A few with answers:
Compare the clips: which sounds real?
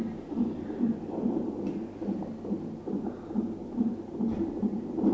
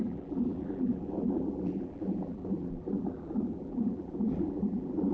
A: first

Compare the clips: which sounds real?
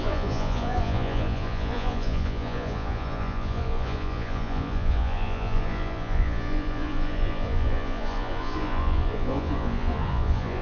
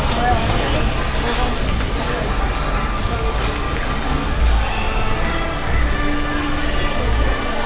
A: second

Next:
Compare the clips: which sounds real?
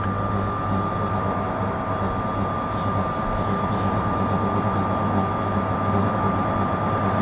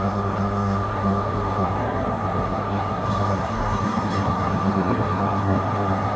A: first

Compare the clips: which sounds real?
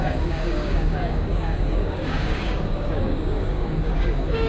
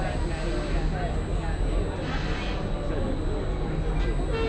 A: second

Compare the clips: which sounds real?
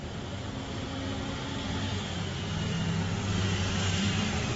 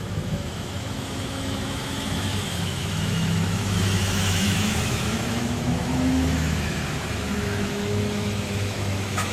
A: first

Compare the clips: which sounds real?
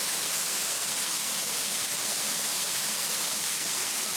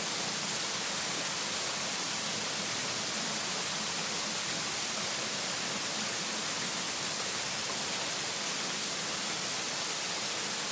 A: second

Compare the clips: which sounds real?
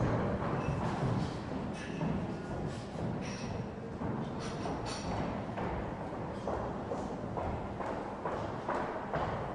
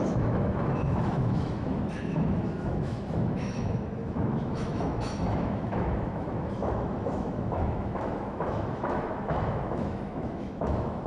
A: first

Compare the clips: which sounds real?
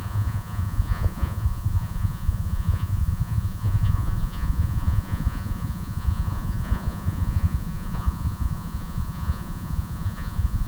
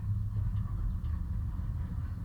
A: second